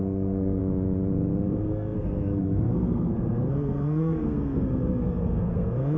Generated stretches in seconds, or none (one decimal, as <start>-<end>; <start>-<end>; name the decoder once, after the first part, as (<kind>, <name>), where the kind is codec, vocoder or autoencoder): 0.0-0.6 (codec, SNAC); 1.5-6.0